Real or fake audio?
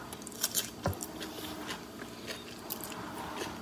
real